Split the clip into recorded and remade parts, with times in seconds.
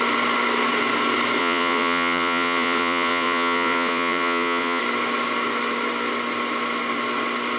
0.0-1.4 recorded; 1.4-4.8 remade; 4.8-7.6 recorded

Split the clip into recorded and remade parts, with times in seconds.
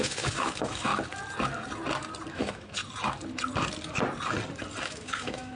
0.0-0.9 remade; 0.9-2.3 recorded; 2.3-2.8 remade; 2.8-4.8 recorded; 4.8-5.6 remade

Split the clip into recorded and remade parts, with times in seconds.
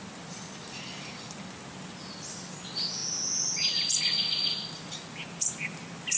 0.0-6.2 recorded